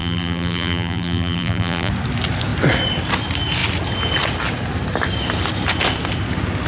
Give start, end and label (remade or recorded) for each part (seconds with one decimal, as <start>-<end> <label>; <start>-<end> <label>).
0.0-1.9 remade; 1.9-6.7 recorded